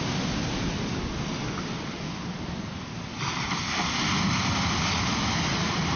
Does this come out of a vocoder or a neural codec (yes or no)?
no